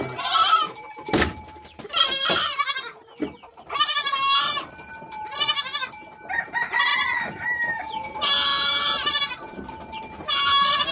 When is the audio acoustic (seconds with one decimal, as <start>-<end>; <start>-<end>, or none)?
0.0-0.4; 1.9-6.9; 7.8-8.5

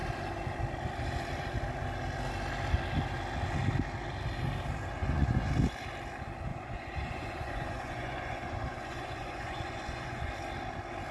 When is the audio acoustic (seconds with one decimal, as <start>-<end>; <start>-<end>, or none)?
0.0-5.0; 5.5-6.5; 10.3-11.1

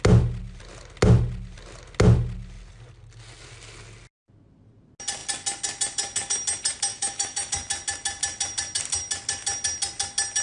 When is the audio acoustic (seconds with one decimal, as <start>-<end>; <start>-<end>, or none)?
0.0-6.9; 7.5-10.4

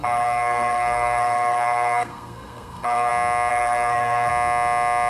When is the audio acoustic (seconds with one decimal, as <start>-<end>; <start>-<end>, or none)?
3.1-3.5; 4.3-5.1

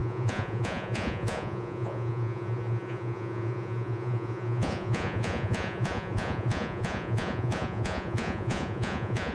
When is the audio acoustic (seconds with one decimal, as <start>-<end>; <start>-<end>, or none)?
none